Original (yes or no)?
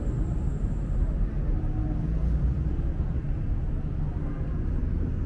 yes